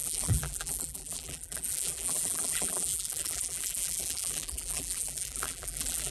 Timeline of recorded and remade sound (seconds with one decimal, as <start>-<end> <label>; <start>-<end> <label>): 0.0-6.1 remade